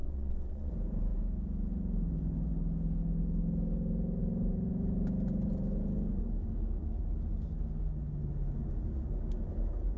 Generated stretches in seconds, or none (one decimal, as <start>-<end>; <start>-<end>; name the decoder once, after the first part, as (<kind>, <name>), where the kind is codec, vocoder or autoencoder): 0.0-0.7 (vocoder, WaveNeXt)